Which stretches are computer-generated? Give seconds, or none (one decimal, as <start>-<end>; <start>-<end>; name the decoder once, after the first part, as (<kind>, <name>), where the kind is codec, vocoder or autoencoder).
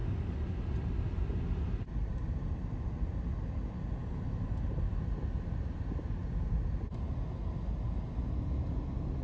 none